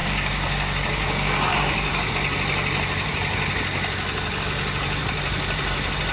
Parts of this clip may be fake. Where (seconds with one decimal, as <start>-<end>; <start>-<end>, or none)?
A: 0.0-2.1